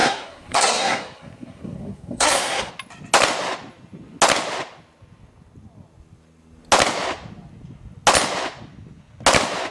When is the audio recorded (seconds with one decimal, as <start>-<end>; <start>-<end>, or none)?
2.7-9.7